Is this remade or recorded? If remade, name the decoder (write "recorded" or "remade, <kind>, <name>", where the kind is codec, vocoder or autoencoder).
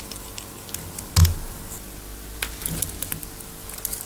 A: recorded